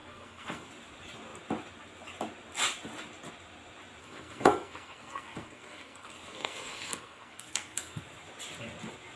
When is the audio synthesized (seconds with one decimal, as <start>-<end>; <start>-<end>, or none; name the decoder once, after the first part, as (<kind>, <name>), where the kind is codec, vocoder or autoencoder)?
0.0-0.7 (codec, SNAC); 4.0-8.0